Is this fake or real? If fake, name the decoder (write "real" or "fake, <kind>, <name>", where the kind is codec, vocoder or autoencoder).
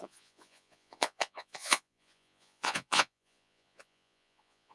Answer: fake, vocoder, Vocos